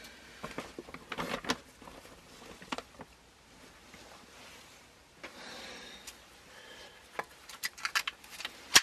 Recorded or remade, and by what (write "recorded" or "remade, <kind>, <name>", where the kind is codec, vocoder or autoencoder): recorded